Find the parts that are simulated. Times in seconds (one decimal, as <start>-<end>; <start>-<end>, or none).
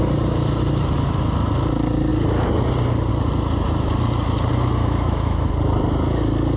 4.8-5.5